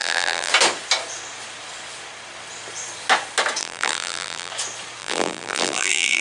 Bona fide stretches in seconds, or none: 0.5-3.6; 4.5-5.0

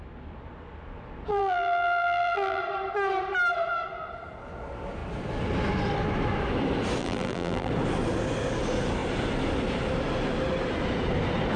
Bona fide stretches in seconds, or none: 0.0-1.3; 2.6-7.0; 7.7-11.6